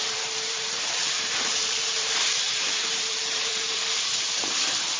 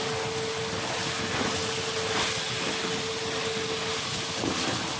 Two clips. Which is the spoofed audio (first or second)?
first